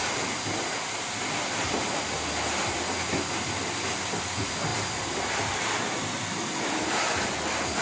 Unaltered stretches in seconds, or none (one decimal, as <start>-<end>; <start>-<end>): 0.0-4.7; 5.6-7.8

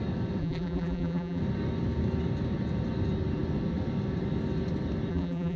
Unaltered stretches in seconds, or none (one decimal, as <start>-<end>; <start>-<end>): 0.0-0.4; 1.4-5.1

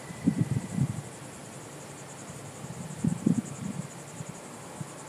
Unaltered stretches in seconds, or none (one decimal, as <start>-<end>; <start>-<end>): 0.0-1.4; 3.9-5.1

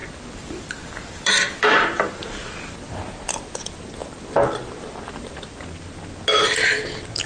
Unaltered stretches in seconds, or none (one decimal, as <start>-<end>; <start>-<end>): 3.1-7.3

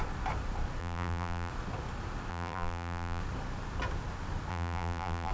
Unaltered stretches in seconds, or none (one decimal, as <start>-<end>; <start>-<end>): 0.0-0.8; 1.5-2.3; 3.2-4.5

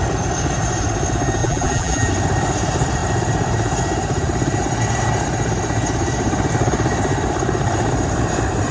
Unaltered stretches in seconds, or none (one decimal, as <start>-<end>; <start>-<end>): 0.0-1.4; 2.1-8.7